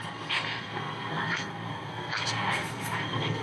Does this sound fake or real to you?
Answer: fake